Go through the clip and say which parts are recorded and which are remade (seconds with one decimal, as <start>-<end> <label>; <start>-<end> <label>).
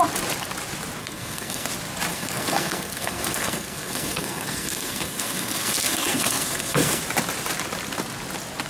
0.0-1.0 recorded; 1.0-1.7 remade; 1.7-2.1 recorded; 2.1-7.0 remade; 7.0-8.7 recorded